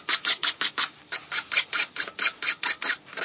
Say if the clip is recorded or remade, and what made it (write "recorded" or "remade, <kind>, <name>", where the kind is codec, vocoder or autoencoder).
recorded